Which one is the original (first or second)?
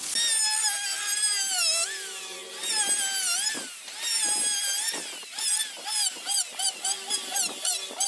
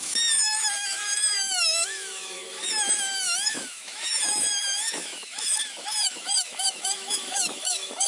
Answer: first